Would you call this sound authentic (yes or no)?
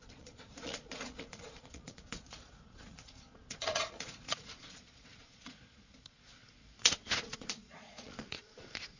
no